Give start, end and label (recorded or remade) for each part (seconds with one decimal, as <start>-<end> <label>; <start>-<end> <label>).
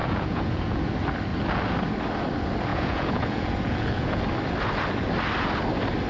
0.0-0.8 remade; 0.8-2.7 recorded; 2.7-4.2 remade; 4.2-6.1 recorded